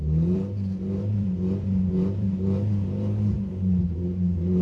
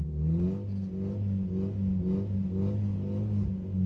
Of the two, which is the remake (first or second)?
first